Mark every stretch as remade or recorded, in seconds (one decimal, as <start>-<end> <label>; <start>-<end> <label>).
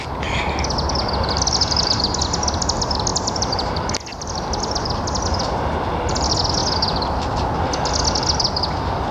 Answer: 0.0-3.1 recorded; 3.1-4.3 remade; 4.3-9.1 recorded